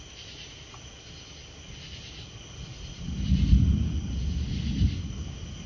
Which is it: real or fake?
real